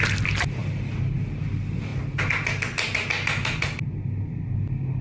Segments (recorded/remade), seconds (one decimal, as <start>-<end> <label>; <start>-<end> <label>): 0.0-0.6 remade; 0.6-1.3 recorded; 1.3-1.9 remade; 1.9-5.0 recorded